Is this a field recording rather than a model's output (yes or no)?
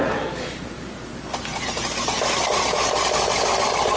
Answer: yes